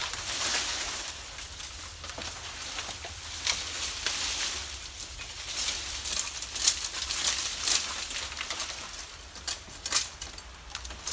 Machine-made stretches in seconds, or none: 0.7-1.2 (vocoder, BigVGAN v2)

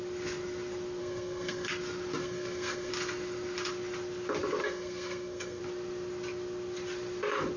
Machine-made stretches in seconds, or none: 1.0-1.7 (codec, SNAC); 2.2-2.9; 4.6-5.6

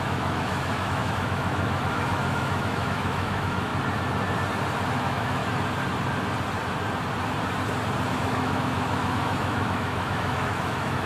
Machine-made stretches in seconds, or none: 0.0-3.7 (autoencoder, DAC-VAE); 4.9-5.4; 8.1-11.1

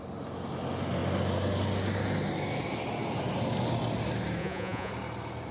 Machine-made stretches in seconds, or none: 4.4-4.9 (vocoder, Vocos)

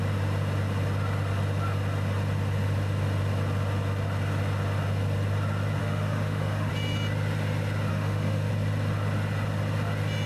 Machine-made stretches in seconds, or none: 5.8-6.7 (autoencoder, DAC-VAE); 7.9-8.5

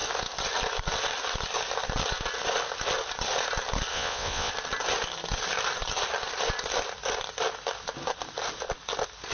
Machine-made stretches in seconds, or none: 3.9-4.5 (vocoder, WaveNeXt)

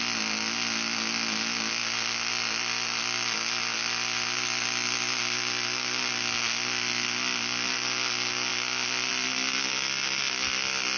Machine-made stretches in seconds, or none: none

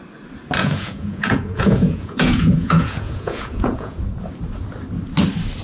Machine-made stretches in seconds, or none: 0.6-4.0 (vocoder, Vocos)